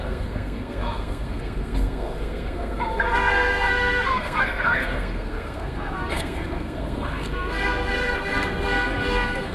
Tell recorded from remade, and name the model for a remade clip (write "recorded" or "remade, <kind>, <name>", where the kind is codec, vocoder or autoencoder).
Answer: remade, codec, SNAC